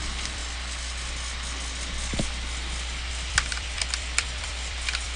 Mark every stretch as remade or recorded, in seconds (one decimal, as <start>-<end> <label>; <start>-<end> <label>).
0.0-0.4 remade; 0.4-3.1 recorded; 3.1-5.2 remade